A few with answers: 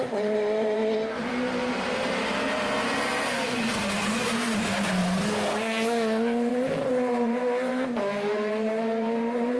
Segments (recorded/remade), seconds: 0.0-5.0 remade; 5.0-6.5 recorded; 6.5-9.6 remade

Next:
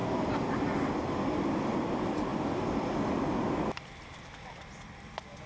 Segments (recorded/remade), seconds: 0.0-0.9 remade; 0.9-2.3 recorded; 2.3-2.9 remade; 2.9-5.5 recorded